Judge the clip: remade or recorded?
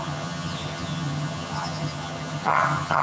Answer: remade